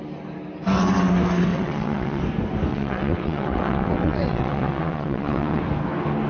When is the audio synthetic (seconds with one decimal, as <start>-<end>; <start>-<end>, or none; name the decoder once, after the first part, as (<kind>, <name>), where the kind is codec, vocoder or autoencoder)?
1.5-2.2 (vocoder, WaveNeXt); 2.7-5.6

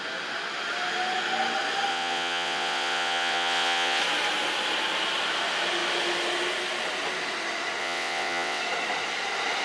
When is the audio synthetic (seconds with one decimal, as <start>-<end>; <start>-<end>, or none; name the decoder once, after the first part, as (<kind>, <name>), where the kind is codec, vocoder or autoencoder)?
1.9-4.0 (vocoder, WaveNeXt); 7.8-8.6

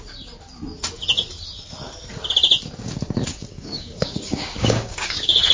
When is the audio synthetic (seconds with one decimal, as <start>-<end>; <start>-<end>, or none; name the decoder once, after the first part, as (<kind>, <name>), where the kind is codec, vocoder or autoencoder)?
3.3-5.5 (codec, DAC)

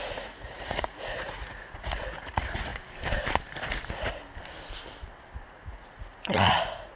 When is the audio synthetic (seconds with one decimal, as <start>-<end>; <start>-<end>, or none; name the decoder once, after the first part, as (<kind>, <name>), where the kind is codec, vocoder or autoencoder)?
0.0-2.7 (vocoder, Vocos); 3.7-4.2; 5.5-7.0

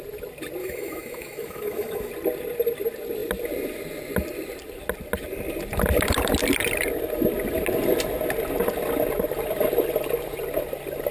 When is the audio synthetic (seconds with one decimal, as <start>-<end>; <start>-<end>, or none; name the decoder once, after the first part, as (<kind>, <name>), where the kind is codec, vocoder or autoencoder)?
0.6-2.1 (autoencoder, DAC-VAE)

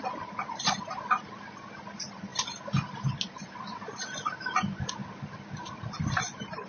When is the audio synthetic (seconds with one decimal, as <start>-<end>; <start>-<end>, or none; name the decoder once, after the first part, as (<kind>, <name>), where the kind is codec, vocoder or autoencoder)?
none